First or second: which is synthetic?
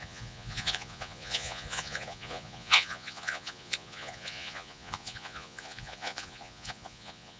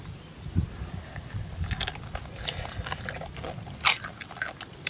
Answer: first